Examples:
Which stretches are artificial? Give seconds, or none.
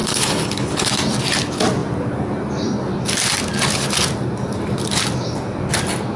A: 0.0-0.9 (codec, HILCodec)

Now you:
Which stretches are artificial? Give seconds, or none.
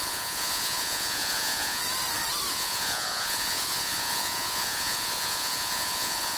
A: 0.0-1.8 (vocoder, Vocos); 2.5-6.4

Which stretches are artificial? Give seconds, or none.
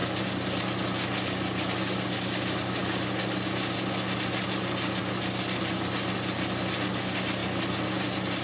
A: none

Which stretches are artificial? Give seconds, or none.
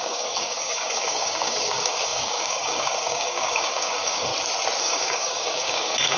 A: 0.0-4.3 (codec, DAC); 4.8-6.2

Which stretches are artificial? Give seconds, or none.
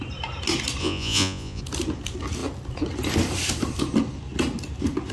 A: 0.8-1.6 (vocoder, Vocos)